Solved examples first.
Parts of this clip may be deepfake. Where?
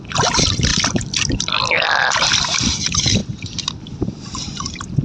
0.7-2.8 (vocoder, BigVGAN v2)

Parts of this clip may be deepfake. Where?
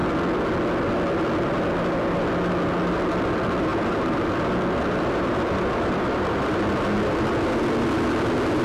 3.7-7.6 (vocoder, BigVGAN v2)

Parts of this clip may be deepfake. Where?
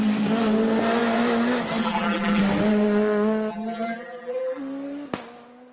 1.8-2.4 (vocoder, BigVGAN v2); 3.5-4.6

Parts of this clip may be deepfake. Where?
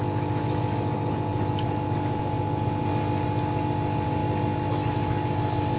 none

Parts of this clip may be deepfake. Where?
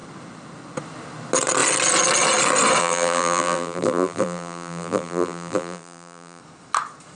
2.8-6.4 (vocoder, BigVGAN v2)